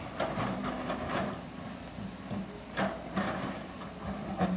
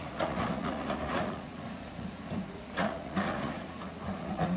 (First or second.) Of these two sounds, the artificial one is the second